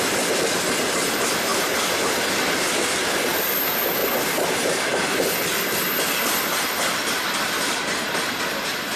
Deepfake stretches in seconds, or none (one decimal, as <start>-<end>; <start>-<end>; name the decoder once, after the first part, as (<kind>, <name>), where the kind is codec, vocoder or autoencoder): none